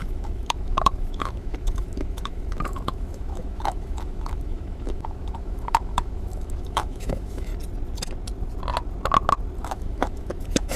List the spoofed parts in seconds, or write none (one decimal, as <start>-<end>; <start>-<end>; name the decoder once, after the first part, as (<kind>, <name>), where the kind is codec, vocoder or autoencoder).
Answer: 0.0-7.5 (autoencoder, DAC-VAE); 9.6-10.8